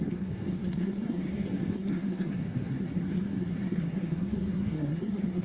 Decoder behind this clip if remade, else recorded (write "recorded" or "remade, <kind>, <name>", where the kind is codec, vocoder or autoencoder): remade, codec, SNAC